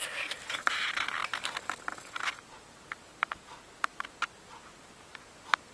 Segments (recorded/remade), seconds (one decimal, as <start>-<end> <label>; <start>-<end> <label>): 0.0-5.7 recorded